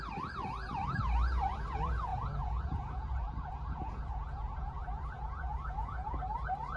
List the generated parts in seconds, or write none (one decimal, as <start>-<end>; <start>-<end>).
2.1-6.2

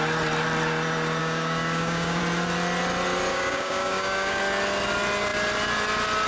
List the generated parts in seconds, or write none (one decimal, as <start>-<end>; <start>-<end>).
1.2-2.2; 3.3-4.4

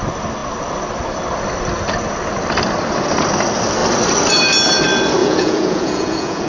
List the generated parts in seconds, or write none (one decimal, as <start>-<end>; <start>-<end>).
5.2-6.5

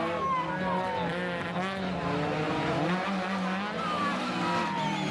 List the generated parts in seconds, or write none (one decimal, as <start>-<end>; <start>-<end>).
none

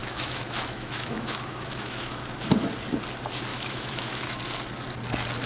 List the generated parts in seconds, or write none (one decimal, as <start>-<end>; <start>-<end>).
0.0-2.2; 3.5-4.4